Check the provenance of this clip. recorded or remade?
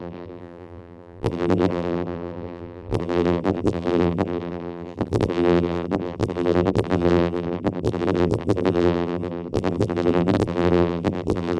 remade